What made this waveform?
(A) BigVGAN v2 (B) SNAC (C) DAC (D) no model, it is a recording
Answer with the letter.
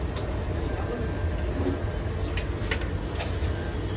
D